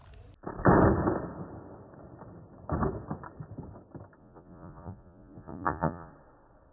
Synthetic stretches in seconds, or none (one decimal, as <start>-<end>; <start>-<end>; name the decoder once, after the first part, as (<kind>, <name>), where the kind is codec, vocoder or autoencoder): 4.2-6.1 (vocoder, Vocos)